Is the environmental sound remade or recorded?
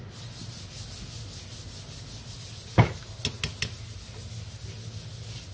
recorded